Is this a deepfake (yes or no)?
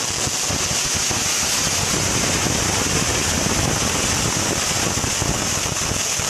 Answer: no